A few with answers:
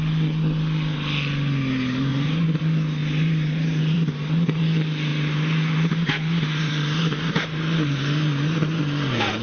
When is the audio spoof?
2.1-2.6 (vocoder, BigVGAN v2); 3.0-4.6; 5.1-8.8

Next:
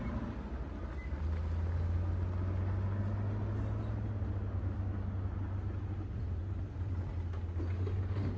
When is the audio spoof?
6.4-6.9 (vocoder, BigVGAN v2)

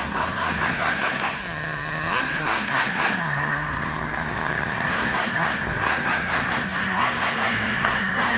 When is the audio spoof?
0.0-1.4 (codec, SNAC); 2.2-8.4

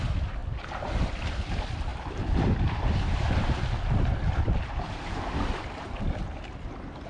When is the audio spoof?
0.0-0.4 (vocoder, BigVGAN v2); 1.1-7.1

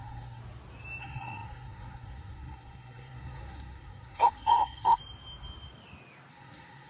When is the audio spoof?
0.0-0.4 (codec, SNAC); 1.0-5.0; 6.3-6.9

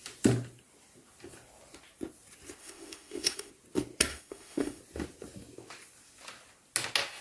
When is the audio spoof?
2.6-3.5 (autoencoder, DAC-VAE); 4.1-4.8

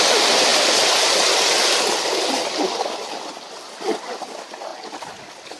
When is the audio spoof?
none